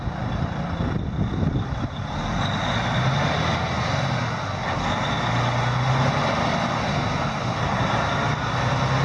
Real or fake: real